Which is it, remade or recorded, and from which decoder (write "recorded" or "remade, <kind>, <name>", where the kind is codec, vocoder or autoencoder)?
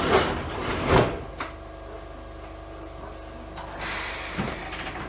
recorded